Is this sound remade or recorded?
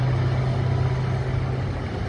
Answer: recorded